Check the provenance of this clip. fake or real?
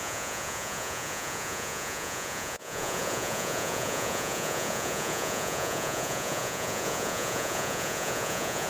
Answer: fake